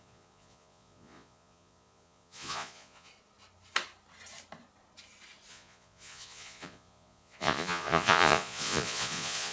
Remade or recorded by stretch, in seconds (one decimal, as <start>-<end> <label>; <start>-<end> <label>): 0.0-3.1 remade; 3.1-5.5 recorded; 5.5-9.5 remade